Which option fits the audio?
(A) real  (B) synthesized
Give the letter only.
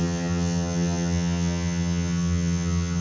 B